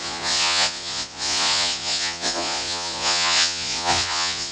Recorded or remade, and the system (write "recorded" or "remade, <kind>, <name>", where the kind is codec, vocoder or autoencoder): remade, vocoder, Vocos